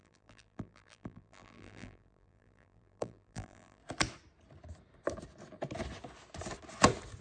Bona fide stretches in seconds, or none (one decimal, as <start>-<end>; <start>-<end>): 3.8-7.2